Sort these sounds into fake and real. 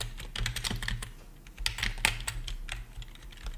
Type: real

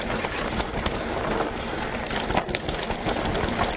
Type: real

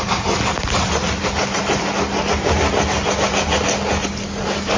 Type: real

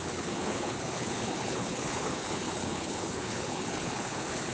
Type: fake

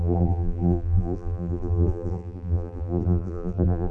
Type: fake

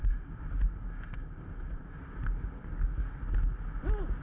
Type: real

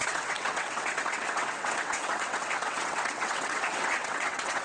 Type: fake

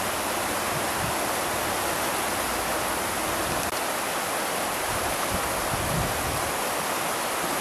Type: real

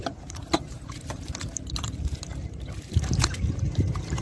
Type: fake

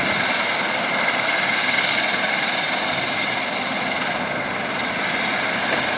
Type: real